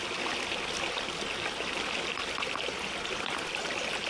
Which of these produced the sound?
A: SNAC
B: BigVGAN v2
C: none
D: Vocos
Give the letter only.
C